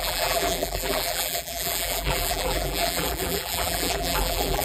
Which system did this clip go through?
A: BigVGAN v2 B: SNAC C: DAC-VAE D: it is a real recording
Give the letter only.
A